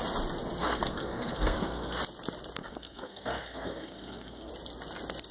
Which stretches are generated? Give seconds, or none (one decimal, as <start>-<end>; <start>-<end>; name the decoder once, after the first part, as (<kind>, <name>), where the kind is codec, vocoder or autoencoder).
0.6-2.0 (codec, SNAC); 2.6-4.5